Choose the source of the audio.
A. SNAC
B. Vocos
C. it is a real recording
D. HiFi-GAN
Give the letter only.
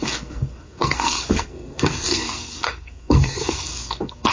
A